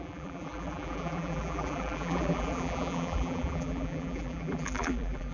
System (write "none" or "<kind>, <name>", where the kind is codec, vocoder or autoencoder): vocoder, BigVGAN v2